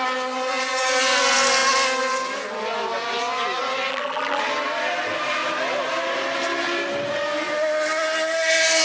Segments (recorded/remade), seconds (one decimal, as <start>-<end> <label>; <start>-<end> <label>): 0.0-3.9 recorded; 3.9-4.4 remade; 4.4-8.8 recorded